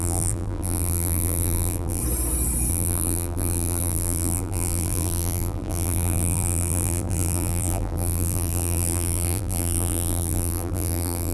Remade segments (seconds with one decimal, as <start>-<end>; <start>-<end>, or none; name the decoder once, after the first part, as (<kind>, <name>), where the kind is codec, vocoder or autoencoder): 0.0-2.0 (vocoder, BigVGAN v2); 2.7-11.3